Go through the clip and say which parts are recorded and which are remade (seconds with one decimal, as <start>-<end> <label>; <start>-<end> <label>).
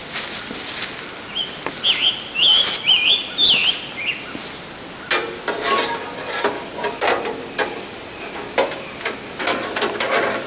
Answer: 0.0-10.5 recorded